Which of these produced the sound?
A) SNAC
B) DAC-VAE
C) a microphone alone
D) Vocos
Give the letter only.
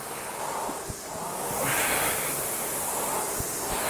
C